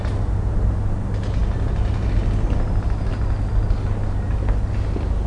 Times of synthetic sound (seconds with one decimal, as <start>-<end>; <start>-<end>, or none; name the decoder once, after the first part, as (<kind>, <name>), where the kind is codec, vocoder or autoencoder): none